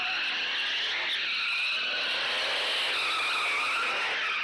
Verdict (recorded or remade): recorded